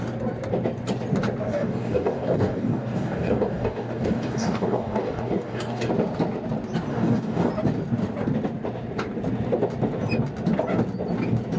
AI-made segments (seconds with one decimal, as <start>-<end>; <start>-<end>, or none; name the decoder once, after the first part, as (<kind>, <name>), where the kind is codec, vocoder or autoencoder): 1.5-5.9 (codec, DAC); 6.9-7.5